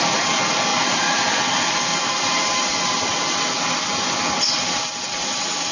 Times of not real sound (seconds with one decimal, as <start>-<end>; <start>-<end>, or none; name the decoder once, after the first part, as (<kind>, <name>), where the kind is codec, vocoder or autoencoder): 0.7-3.4 (vocoder, BigVGAN v2)